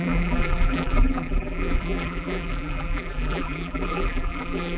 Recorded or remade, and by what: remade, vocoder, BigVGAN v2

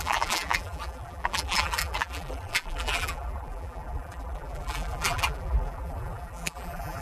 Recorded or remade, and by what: remade, vocoder, BigVGAN v2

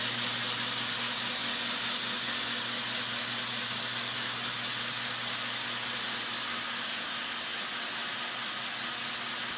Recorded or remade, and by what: recorded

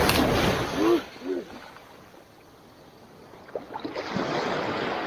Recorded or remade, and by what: recorded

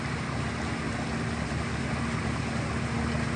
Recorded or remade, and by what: recorded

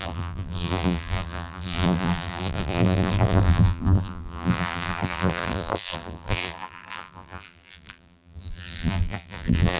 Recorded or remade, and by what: remade, vocoder, BigVGAN v2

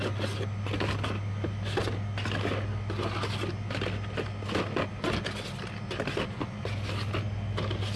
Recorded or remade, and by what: recorded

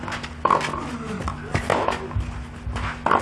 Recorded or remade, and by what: recorded